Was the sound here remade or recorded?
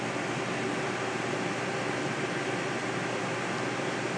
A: recorded